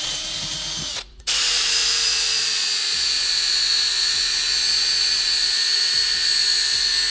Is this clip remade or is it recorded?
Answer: remade